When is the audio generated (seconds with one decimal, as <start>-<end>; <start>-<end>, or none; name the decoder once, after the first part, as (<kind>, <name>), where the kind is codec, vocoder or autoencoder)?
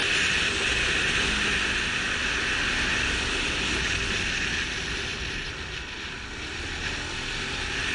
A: 0.0-1.1 (vocoder, BigVGAN v2); 2.2-3.8; 5.1-5.9